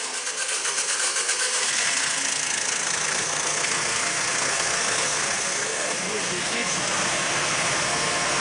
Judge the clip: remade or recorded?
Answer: remade